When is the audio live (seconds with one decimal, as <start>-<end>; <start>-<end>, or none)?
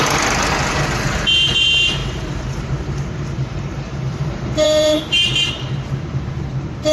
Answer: none